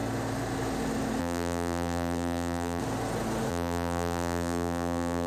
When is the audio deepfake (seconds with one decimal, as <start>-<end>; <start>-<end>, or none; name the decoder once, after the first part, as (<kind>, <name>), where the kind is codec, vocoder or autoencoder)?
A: 1.2-2.8 (vocoder, BigVGAN v2); 3.5-5.3